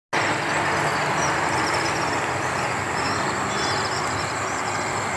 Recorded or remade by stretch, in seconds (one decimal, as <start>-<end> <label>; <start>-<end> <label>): 0.0-5.2 recorded